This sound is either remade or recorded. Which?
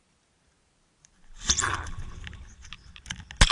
recorded